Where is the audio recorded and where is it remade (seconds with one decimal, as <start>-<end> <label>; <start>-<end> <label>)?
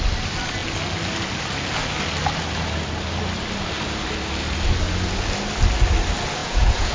0.0-6.4 recorded; 6.4-6.9 remade